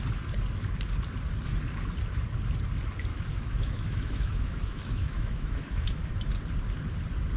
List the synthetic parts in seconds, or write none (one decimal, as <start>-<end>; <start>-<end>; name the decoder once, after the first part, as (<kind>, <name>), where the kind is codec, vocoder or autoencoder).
3.1-6.1 (autoencoder, DAC-VAE)